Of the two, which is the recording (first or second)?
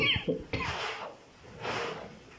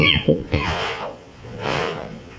first